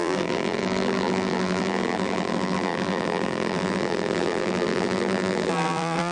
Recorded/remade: remade